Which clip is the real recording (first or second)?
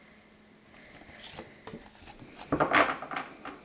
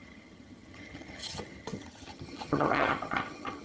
first